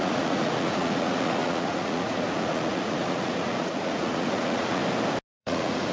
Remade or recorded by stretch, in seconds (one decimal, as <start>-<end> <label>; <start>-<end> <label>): 0.0-4.8 remade; 4.8-5.4 recorded; 5.4-5.9 remade